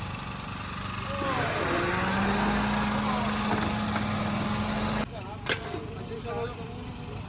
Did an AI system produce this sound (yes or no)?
no